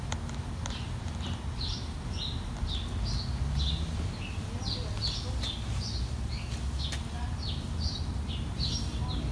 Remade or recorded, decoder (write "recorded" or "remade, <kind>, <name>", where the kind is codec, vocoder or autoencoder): recorded